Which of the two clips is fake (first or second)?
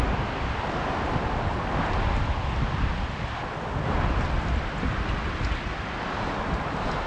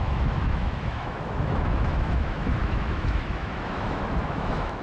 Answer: second